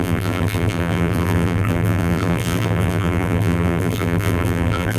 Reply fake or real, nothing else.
fake